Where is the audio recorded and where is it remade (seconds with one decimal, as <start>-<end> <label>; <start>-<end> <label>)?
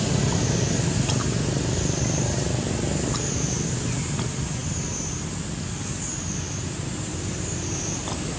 0.0-8.4 recorded